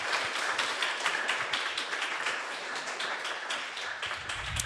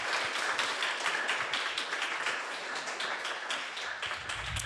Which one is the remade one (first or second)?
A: first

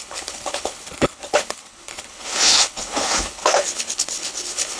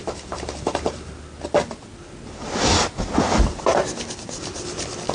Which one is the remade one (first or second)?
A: first